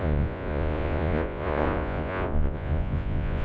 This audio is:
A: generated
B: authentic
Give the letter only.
A